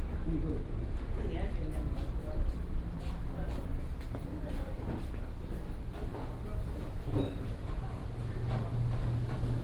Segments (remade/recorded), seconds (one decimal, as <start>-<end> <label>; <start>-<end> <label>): 0.0-9.6 recorded